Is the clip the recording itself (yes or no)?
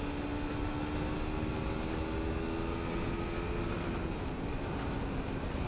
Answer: yes